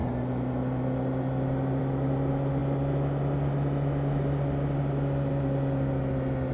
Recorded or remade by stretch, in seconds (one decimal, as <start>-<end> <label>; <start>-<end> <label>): 0.0-6.5 recorded